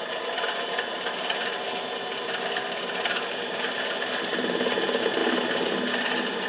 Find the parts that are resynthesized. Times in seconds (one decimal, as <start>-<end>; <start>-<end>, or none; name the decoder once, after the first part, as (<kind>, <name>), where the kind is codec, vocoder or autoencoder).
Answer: none